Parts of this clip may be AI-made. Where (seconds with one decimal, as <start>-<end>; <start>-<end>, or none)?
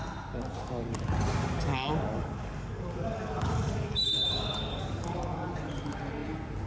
1.7-5.7